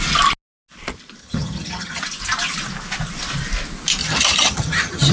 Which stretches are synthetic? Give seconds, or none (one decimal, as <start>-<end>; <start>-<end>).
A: 1.2-2.0; 4.0-5.1